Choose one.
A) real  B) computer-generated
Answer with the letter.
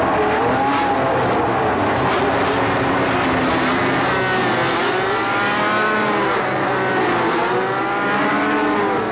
A